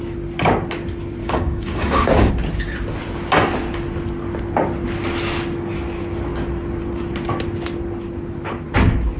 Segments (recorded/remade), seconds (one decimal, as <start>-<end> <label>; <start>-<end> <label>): 0.0-1.2 recorded; 1.2-2.3 remade; 2.3-9.2 recorded